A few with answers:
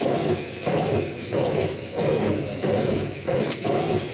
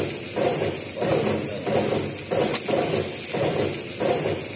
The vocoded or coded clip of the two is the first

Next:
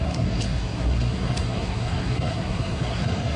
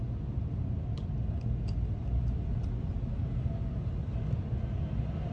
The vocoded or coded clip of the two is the first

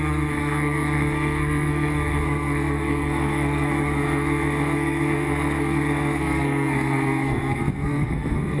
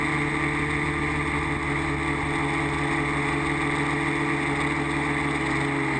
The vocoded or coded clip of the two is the first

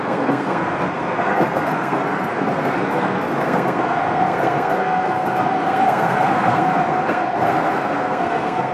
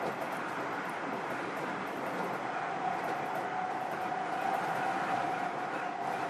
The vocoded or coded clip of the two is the first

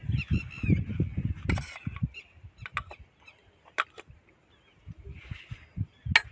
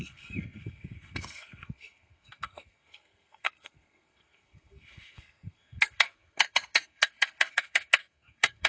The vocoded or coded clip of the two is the second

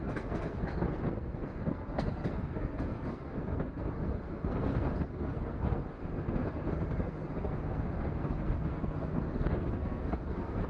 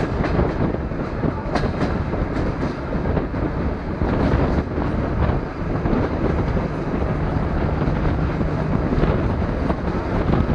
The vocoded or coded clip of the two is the first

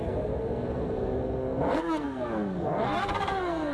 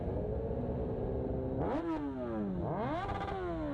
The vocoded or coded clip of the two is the first